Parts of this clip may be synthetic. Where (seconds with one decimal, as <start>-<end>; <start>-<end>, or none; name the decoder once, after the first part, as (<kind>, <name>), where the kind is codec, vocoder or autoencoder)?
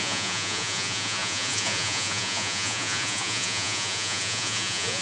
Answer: 0.0-5.0 (vocoder, Vocos)